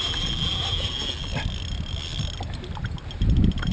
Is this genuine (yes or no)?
yes